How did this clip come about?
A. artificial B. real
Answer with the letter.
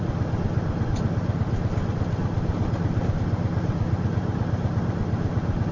A